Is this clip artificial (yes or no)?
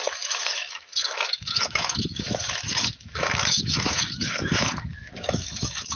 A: yes